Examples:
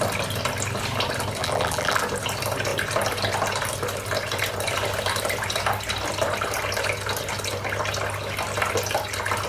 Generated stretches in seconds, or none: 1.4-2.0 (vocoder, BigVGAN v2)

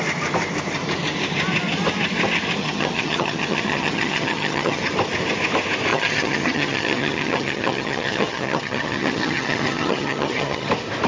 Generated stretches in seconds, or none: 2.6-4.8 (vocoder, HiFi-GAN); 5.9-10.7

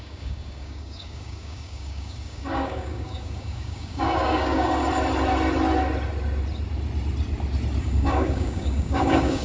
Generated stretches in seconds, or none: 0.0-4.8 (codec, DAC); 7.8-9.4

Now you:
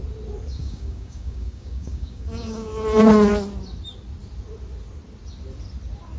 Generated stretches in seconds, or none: 0.6-2.7 (codec, DAC)